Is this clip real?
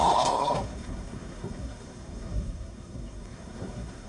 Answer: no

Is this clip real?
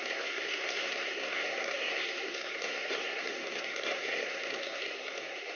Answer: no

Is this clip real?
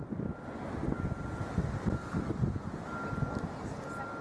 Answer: yes